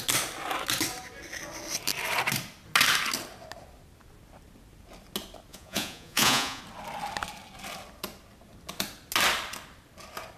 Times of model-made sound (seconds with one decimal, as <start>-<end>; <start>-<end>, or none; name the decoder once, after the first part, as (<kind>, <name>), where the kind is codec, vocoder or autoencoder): 5.5-6.6 (vocoder, Vocos)